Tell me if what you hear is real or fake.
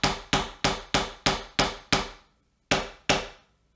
real